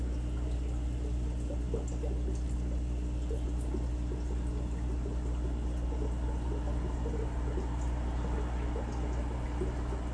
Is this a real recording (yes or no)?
yes